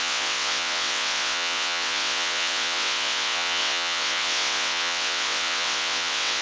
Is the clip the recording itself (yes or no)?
no